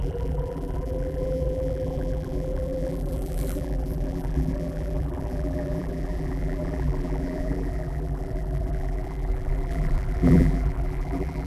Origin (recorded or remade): remade